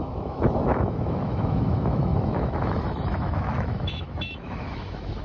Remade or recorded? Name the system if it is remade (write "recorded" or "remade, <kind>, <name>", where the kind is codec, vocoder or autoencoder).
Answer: remade, autoencoder, DAC-VAE